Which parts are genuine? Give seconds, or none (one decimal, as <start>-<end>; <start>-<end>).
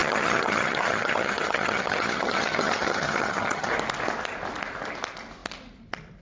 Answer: 3.7-6.2